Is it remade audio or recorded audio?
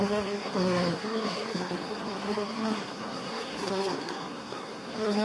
remade